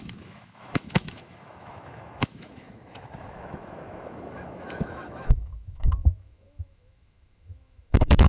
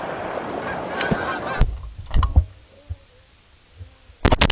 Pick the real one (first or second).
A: second